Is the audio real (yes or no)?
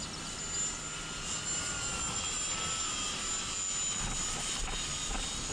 yes